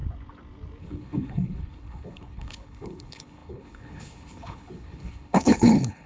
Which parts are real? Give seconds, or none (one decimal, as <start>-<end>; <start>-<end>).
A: 0.0-0.8

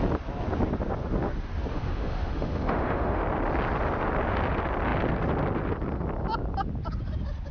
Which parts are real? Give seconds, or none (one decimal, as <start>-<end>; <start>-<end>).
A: 0.0-1.7; 3.2-7.5

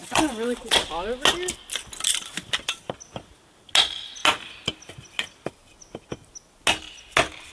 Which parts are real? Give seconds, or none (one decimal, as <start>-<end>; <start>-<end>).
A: 0.9-7.5

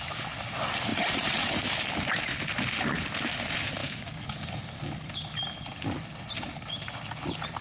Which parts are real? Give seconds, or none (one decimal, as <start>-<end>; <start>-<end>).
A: 0.0-3.8; 4.3-7.6

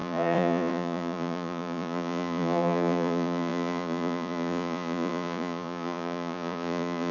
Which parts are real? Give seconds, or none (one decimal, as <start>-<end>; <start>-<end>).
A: none

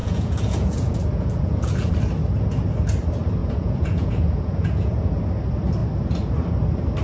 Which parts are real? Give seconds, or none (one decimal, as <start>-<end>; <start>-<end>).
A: 1.9-3.4; 5.1-7.0